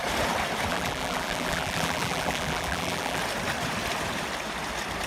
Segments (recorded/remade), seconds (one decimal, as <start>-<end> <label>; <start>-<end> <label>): 0.0-0.7 recorded; 0.7-3.2 remade; 3.2-5.1 recorded